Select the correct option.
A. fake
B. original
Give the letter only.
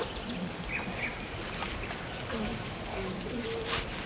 A